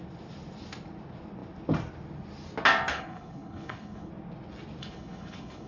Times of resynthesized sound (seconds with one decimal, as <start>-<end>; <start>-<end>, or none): 2.9-4.1; 4.8-5.7